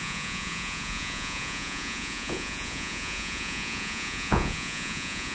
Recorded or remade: remade